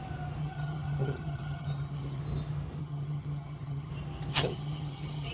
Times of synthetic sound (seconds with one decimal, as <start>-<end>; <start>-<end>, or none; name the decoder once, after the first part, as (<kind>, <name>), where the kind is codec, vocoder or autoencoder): 0.4-2.2 (vocoder, HiFi-GAN); 2.8-3.9; 4.3-5.3